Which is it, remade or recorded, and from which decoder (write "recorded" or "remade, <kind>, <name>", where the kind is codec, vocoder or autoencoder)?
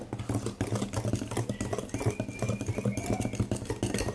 recorded